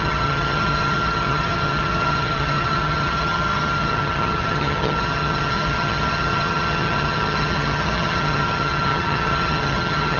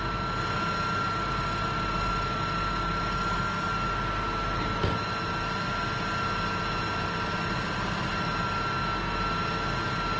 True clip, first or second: second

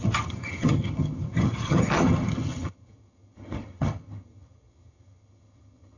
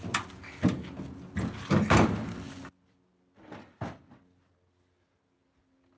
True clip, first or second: second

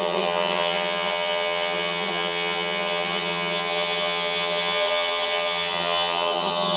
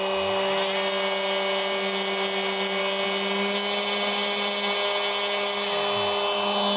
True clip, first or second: second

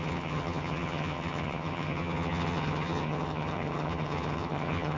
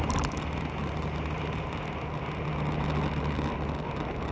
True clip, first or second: second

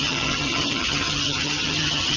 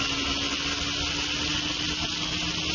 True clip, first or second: second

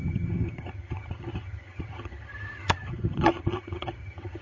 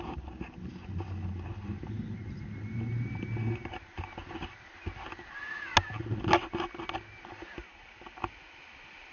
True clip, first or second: second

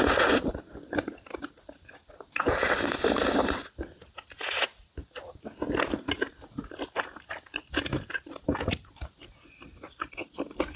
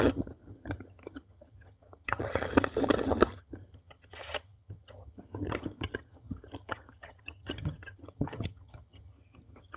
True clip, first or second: first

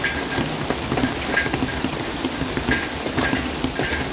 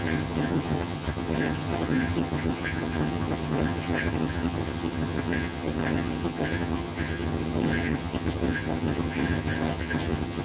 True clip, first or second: first